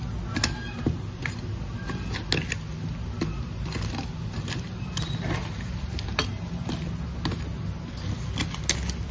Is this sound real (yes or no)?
yes